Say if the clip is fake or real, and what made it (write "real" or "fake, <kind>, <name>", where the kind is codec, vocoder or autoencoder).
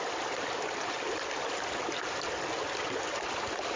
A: real